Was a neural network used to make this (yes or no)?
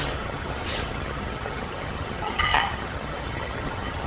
yes